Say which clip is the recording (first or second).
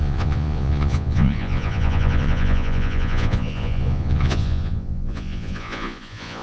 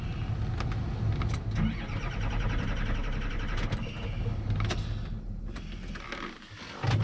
second